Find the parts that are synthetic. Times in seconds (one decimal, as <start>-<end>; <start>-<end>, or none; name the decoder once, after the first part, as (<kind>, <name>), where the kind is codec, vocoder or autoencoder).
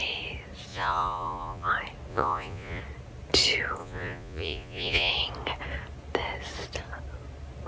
0.7-1.7 (vocoder, Vocos); 2.1-2.8; 3.8-5.1